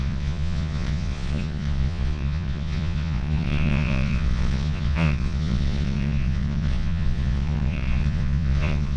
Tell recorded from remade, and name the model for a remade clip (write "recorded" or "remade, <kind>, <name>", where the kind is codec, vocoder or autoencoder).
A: remade, vocoder, Vocos